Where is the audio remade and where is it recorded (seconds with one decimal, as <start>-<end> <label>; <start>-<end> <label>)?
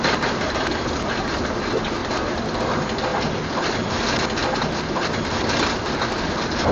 0.0-2.0 recorded; 2.0-2.6 remade; 2.6-3.1 recorded; 3.1-3.9 remade; 3.9-6.7 recorded